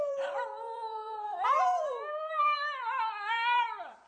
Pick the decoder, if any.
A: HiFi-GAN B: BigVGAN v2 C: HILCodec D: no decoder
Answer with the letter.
B